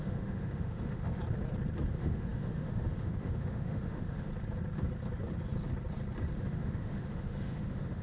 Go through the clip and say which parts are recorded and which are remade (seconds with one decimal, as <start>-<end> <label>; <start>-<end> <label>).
0.0-1.2 remade; 1.2-1.9 recorded; 1.9-4.3 remade; 4.3-6.3 recorded; 6.3-8.0 remade